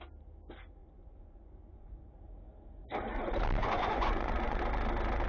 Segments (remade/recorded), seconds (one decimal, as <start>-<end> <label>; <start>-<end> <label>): 0.0-0.8 recorded; 0.8-2.1 remade; 2.1-3.6 recorded; 3.6-4.6 remade; 4.6-5.3 recorded